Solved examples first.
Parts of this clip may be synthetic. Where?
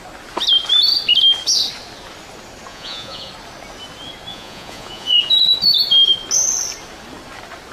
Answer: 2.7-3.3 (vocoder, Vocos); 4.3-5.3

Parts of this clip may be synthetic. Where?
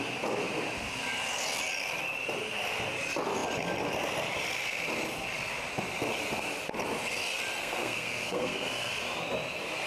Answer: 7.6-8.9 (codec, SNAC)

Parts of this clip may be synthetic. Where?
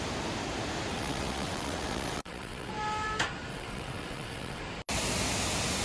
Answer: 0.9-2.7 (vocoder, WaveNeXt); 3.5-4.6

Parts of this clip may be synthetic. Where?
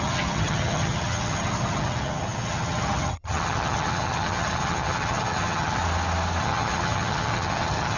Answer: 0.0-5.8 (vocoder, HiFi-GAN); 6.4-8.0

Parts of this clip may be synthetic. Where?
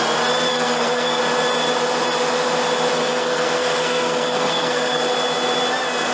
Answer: 0.5-1.2 (codec, SNAC); 3.0-5.0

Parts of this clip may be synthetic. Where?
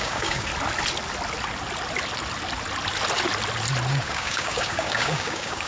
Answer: 0.0-0.5 (codec, DAC); 3.9-5.7